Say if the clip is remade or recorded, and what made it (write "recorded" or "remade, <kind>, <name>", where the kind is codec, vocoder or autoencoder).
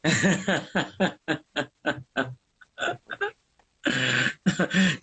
recorded